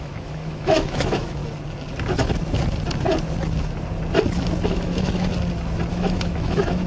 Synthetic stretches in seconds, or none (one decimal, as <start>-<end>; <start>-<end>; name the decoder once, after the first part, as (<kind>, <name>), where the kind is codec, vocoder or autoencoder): 0.0-1.4 (autoencoder, DAC-VAE); 4.7-5.3; 5.9-6.9